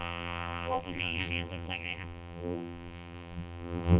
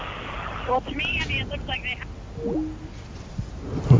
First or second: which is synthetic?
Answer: first